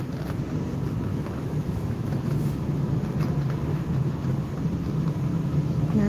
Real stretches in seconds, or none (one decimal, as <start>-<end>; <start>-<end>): 0.0-1.1; 3.0-3.7; 4.3-5.3

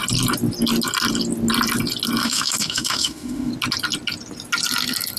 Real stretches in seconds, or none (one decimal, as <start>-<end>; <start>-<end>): 0.0-2.2; 3.5-5.2

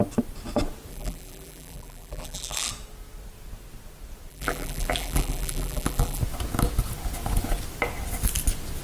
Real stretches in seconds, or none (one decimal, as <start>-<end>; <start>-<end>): 0.0-0.9; 2.7-4.3; 6.2-8.8

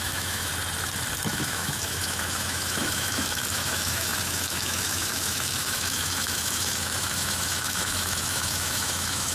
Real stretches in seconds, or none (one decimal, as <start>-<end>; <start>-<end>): 0.5-1.3